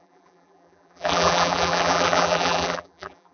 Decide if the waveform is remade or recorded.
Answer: remade